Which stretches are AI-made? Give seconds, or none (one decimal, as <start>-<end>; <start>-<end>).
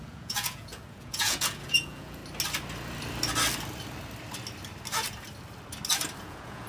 0.0-2.2; 6.2-6.7